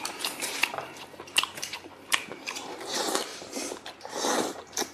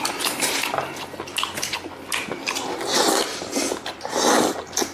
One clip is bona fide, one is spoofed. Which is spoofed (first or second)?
first